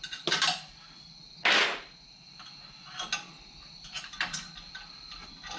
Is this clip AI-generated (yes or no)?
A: no